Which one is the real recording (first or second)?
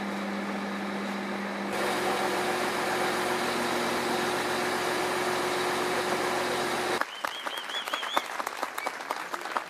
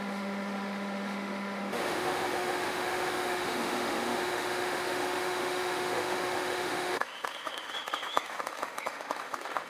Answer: first